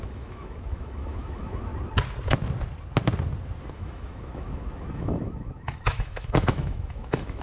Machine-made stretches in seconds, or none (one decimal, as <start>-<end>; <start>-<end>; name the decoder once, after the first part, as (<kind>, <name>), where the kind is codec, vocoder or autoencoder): 0.0-1.7 (autoencoder, DAC-VAE); 3.7-7.4